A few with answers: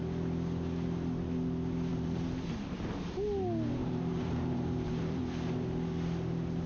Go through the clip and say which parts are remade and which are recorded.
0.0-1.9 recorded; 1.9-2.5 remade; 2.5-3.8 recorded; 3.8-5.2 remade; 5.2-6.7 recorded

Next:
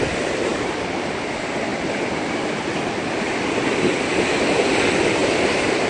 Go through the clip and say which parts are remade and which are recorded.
0.0-0.5 recorded; 0.5-1.1 remade; 1.1-5.2 recorded; 5.2-5.9 remade